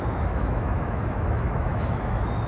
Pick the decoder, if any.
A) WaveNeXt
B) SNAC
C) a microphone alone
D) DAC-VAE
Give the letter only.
D